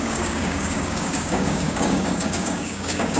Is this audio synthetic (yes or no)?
yes